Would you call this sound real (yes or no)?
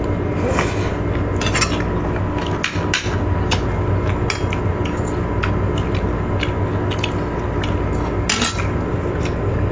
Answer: yes